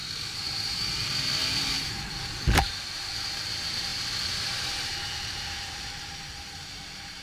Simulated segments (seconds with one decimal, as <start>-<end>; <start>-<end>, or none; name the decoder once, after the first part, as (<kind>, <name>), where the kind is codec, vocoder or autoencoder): 0.0-7.2 (vocoder, BigVGAN v2)